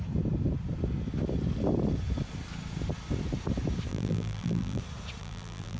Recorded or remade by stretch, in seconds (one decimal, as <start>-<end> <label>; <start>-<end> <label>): 0.0-3.9 recorded; 3.9-4.8 remade; 4.8-5.2 recorded; 5.2-5.8 remade